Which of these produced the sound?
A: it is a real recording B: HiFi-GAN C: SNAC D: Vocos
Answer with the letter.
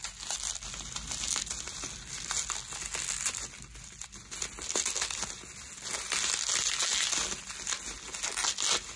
A